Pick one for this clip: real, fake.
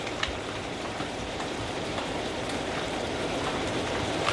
fake